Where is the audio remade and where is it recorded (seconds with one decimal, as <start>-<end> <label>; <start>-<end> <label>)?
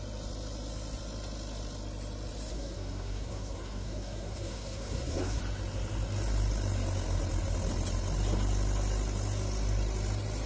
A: 0.0-2.5 recorded; 2.5-5.4 remade; 5.4-10.5 recorded